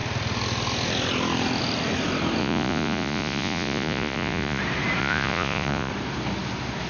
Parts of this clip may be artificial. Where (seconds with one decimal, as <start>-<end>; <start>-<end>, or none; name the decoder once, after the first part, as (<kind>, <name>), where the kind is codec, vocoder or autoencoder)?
2.4-4.6 (vocoder, Vocos); 5.0-5.9